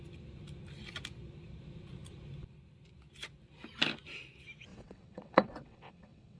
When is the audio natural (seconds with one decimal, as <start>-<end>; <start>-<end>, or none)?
0.0-4.7